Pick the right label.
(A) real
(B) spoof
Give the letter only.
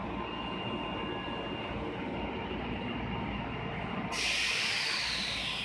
A